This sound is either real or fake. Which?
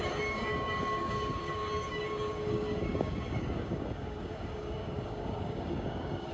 fake